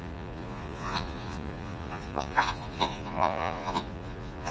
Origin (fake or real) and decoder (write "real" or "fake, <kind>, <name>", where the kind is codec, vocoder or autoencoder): fake, vocoder, Vocos